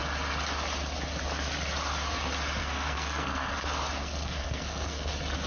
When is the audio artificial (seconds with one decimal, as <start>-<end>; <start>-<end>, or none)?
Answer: 2.6-3.6; 4.0-5.1